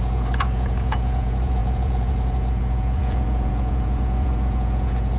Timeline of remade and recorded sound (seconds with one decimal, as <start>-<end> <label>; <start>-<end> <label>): 0.0-5.2 remade